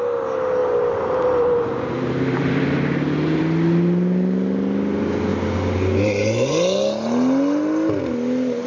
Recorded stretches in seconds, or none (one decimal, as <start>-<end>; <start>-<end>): 0.0-0.6; 3.4-8.7

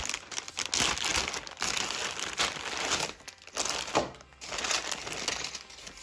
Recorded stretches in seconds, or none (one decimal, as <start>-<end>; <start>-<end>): 0.0-6.0